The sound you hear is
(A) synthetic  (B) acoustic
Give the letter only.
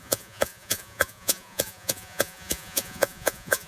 A